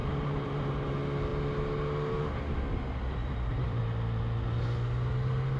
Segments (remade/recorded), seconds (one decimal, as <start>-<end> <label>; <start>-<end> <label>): 0.0-0.9 remade; 0.9-3.2 recorded; 3.2-3.8 remade; 3.8-5.6 recorded